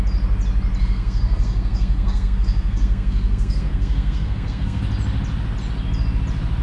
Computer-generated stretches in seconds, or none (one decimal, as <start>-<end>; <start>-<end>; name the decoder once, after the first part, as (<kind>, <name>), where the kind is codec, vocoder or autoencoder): 0.8-4.8 (codec, SNAC)